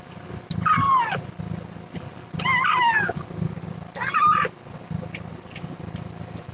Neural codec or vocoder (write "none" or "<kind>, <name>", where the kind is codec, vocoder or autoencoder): none